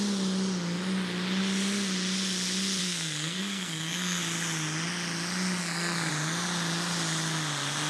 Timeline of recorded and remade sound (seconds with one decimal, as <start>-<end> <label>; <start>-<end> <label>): 0.0-2.8 recorded; 2.8-4.2 remade; 4.2-5.6 recorded; 5.6-6.1 remade; 6.1-7.9 recorded